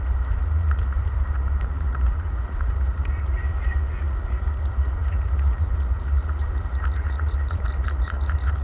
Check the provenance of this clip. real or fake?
fake